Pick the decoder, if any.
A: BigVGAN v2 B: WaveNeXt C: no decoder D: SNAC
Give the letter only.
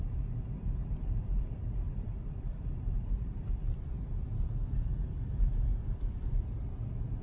A